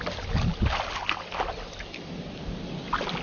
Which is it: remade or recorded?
recorded